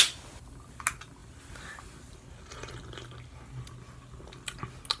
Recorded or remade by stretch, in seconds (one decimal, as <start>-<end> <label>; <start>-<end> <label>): 0.0-5.0 recorded